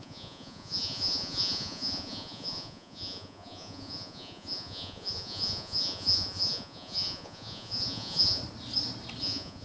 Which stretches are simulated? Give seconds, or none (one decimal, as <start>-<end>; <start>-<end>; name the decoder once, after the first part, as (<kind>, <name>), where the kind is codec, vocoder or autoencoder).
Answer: 0.0-8.4 (vocoder, Vocos); 9.2-9.6

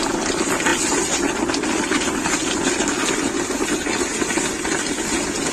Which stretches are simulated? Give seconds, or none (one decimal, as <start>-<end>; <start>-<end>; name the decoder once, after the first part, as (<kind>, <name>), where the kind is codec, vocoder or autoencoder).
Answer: none

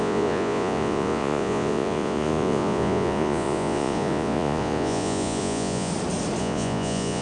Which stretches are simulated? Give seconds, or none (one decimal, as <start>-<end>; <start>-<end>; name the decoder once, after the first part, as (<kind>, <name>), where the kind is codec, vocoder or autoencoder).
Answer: 0.0-5.9 (vocoder, Vocos); 6.4-7.2

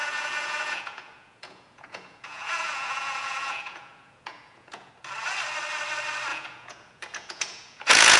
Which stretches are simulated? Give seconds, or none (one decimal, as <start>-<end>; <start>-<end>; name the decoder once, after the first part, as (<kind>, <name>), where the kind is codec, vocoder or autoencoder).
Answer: 0.0-4.9 (vocoder, Vocos); 6.3-8.2

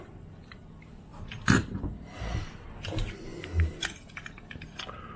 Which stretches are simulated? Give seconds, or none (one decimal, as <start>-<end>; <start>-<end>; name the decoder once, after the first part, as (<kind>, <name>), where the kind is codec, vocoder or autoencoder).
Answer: none